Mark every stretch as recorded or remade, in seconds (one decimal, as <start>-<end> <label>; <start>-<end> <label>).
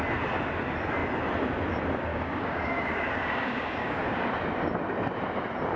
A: 0.0-2.1 recorded; 2.1-4.3 remade; 4.3-5.8 recorded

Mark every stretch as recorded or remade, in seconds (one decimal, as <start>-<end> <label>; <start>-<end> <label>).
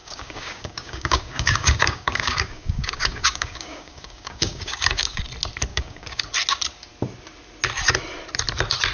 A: 0.0-5.2 remade; 5.2-5.7 recorded; 5.7-6.2 remade; 6.2-8.9 recorded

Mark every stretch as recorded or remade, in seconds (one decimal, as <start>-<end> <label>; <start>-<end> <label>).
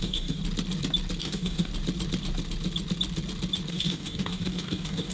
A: 0.0-0.4 remade; 0.4-1.2 recorded; 1.2-1.7 remade; 1.7-3.7 recorded; 3.7-5.1 remade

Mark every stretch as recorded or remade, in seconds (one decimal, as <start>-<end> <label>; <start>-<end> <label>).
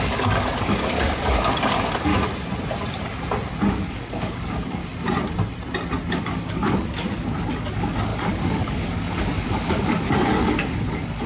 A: 0.0-2.1 remade; 2.1-3.7 recorded; 3.7-4.8 remade; 4.8-6.1 recorded; 6.1-11.3 remade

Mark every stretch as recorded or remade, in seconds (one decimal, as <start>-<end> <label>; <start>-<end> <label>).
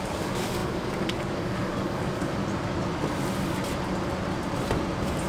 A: 0.0-2.4 remade; 2.4-5.3 recorded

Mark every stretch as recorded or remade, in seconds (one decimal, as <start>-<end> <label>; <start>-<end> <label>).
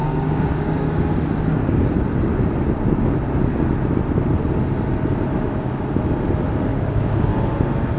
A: 0.0-1.0 remade; 1.0-6.7 recorded; 6.7-7.3 remade; 7.3-8.0 recorded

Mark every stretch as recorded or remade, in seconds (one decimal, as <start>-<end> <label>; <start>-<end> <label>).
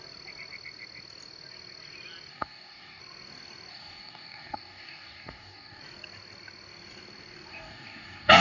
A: 0.0-2.3 recorded; 2.3-3.0 remade; 3.0-3.7 recorded; 3.7-5.8 remade; 5.8-7.5 recorded; 7.5-8.4 remade